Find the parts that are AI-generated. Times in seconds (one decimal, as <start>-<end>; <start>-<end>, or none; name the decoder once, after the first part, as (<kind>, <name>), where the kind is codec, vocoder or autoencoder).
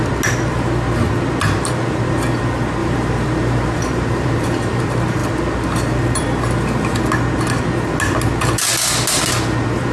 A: 2.8-4.8 (vocoder, BigVGAN v2)